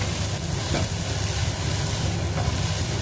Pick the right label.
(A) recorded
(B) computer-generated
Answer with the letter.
A